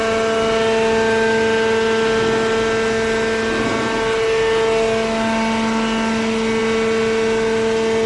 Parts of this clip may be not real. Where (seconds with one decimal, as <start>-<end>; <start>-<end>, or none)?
none